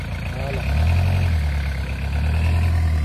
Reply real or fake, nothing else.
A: real